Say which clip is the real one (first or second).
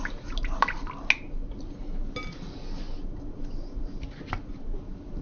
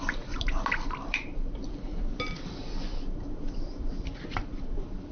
first